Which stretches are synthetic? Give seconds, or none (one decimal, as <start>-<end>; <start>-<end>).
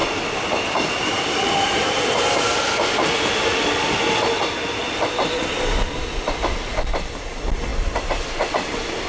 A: 0.0-1.9; 4.8-6.0